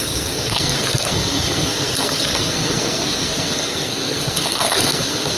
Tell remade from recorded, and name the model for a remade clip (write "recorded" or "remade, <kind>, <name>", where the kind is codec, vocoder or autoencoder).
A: remade, codec, SNAC